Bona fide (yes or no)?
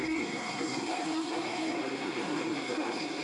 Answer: no